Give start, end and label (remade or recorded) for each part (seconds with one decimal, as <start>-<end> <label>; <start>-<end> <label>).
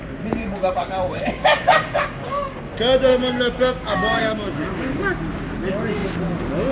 0.0-0.4 recorded; 0.4-2.6 remade; 2.6-3.1 recorded; 3.1-5.0 remade; 5.0-6.7 recorded